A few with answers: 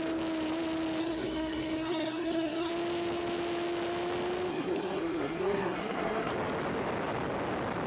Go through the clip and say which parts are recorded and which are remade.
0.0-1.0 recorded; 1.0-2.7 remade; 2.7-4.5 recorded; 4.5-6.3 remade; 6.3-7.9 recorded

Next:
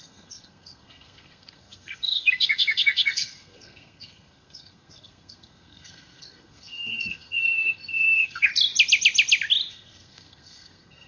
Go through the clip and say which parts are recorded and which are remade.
0.0-8.5 remade; 8.5-9.7 recorded; 9.7-11.1 remade

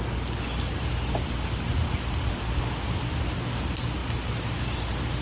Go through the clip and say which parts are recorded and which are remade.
0.0-5.2 recorded

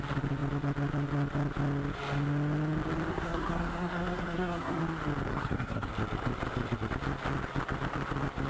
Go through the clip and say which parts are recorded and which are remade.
0.0-3.1 recorded; 3.1-4.8 remade; 4.8-5.3 recorded; 5.3-5.9 remade; 5.9-8.5 recorded